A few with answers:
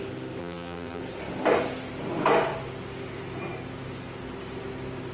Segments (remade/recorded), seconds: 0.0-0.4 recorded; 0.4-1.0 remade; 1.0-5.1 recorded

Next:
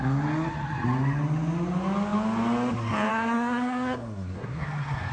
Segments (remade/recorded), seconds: 0.0-3.1 recorded; 3.1-5.1 remade

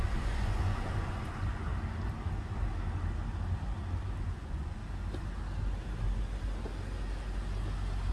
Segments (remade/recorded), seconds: 0.0-1.7 remade; 1.7-4.2 recorded; 4.2-4.8 remade; 4.8-8.1 recorded

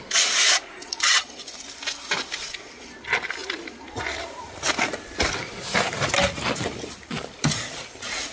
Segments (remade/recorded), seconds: 0.0-0.9 recorded; 0.9-1.4 remade; 1.4-8.3 recorded

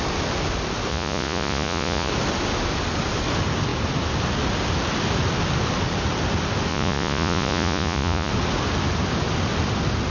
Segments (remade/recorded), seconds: 0.0-0.9 recorded; 0.9-2.1 remade; 2.1-6.7 recorded; 6.7-8.3 remade; 8.3-10.1 recorded

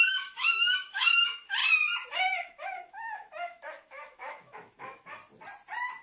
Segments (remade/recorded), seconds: 0.0-1.6 remade; 1.6-2.1 recorded; 2.1-5.2 remade; 5.2-6.0 recorded

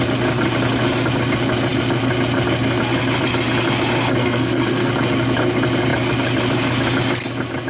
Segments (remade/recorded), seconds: 0.0-4.2 recorded; 4.2-4.9 remade; 4.9-7.7 recorded